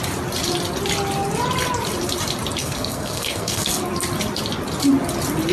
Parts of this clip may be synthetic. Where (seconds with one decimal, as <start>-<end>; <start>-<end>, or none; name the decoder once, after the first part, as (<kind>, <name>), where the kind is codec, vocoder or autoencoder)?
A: 2.6-3.7 (codec, SNAC)